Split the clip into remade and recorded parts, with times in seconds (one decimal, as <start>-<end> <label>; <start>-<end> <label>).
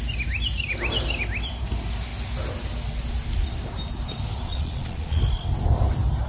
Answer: 0.0-4.5 recorded; 4.5-5.2 remade; 5.2-6.3 recorded